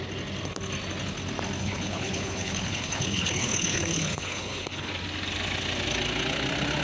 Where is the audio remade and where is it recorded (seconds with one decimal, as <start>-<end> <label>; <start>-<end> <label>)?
0.0-1.6 recorded; 1.6-4.9 remade; 4.9-6.8 recorded